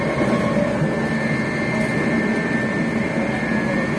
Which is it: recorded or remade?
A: recorded